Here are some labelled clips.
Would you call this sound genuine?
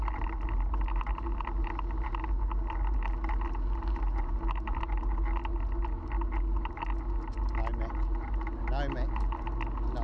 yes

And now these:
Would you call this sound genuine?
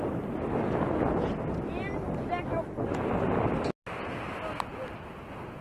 yes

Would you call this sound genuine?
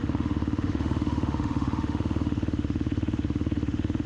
no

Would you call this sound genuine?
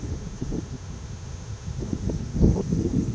no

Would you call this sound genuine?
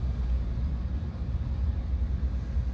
yes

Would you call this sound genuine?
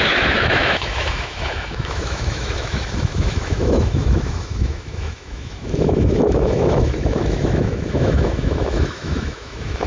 no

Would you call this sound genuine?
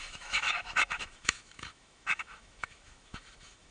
no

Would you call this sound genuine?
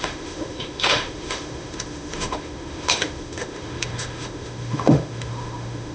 no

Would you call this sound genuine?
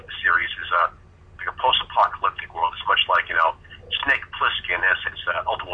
yes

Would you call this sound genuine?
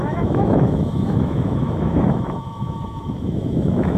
no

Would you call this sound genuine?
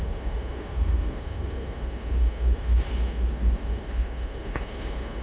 no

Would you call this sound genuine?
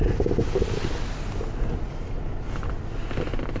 yes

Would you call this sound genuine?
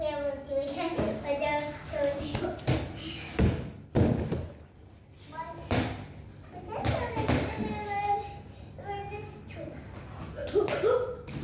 yes